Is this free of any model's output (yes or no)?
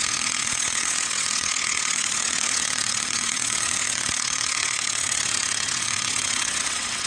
no